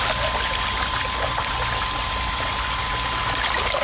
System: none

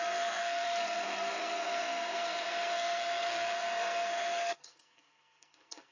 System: codec, SNAC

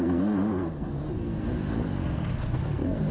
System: codec, SNAC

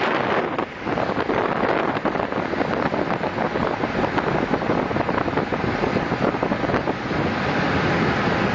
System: none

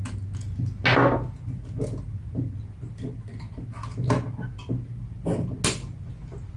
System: none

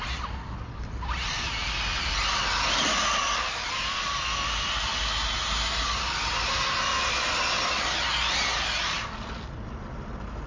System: none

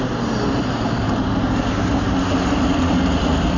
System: none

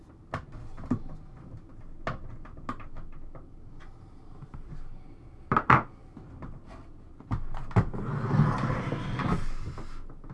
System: none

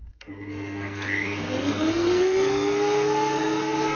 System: codec, SNAC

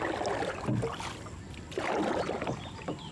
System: none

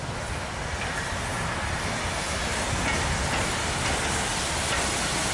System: none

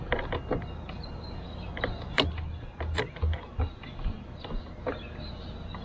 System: none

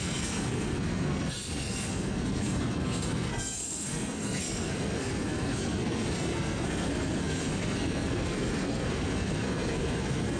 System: codec, SNAC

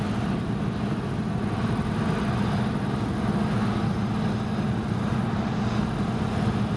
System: none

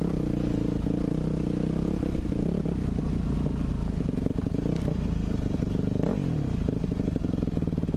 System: none